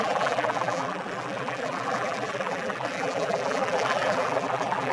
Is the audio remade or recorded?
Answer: remade